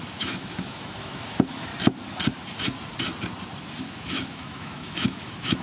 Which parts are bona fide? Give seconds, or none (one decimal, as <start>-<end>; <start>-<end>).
1.7-3.8